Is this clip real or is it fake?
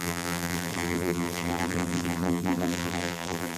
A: fake